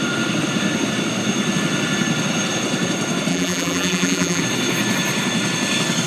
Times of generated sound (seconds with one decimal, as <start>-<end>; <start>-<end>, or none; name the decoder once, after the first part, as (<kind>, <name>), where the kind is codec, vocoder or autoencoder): 3.3-4.4 (vocoder, BigVGAN v2)